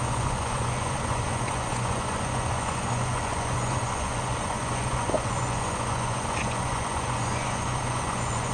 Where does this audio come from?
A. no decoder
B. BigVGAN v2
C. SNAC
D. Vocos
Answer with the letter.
D